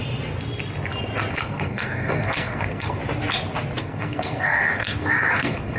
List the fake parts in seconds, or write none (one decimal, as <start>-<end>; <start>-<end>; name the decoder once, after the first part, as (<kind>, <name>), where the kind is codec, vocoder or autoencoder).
1.3-3.0 (codec, SNAC); 3.8-5.8